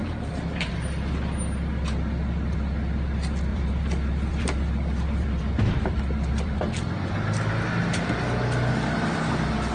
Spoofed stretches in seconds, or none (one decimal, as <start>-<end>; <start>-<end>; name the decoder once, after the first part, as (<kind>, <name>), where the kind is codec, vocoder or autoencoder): 0.0-0.7 (vocoder, BigVGAN v2); 3.5-6.6